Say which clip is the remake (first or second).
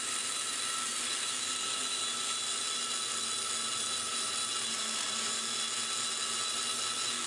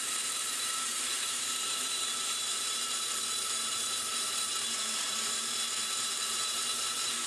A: second